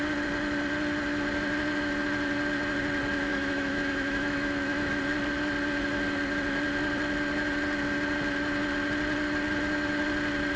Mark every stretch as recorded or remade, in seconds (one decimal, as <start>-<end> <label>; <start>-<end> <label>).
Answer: 0.0-3.3 recorded; 3.3-5.0 remade; 5.0-10.6 recorded